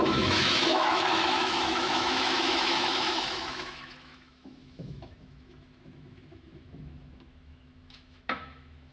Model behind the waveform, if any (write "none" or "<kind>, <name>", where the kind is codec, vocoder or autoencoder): autoencoder, DAC-VAE